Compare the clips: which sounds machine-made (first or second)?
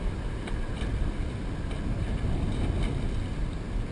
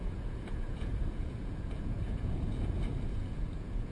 second